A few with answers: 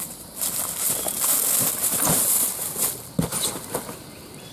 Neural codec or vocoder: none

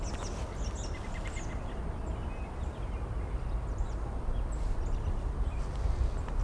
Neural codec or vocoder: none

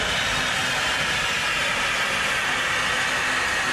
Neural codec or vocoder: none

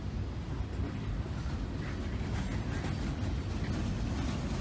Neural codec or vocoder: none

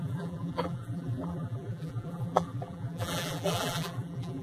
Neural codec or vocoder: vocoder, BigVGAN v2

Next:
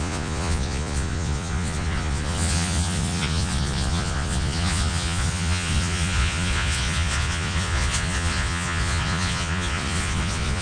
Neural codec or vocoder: vocoder, Vocos